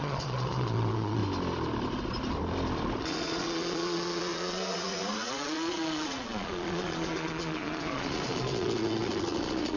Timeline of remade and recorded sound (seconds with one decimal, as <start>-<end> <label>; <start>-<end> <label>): 0.0-1.2 remade; 1.2-3.0 recorded; 3.0-9.8 remade